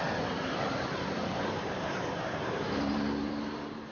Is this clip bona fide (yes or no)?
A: no